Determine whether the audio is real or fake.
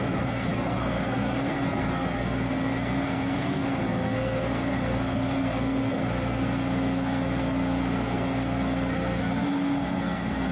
fake